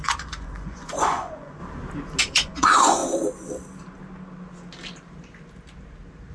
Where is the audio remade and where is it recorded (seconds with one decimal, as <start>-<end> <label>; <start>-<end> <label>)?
0.0-1.6 remade; 1.6-2.2 recorded; 2.2-3.0 remade; 3.0-6.3 recorded